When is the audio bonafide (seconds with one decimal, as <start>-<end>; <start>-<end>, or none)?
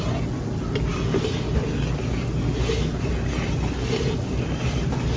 0.0-5.2